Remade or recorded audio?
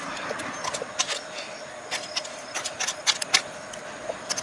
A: recorded